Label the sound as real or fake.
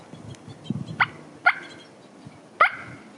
real